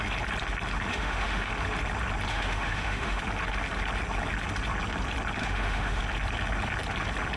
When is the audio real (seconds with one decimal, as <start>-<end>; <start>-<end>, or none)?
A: 0.0-0.9; 1.5-2.3; 3.2-5.4; 6.0-7.4